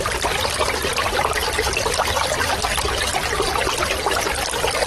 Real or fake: real